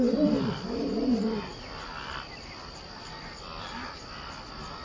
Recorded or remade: recorded